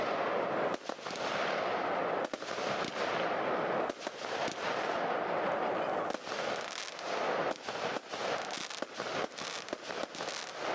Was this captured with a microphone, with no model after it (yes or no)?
yes